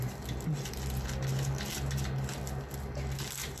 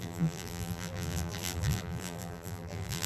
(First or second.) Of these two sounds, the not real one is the second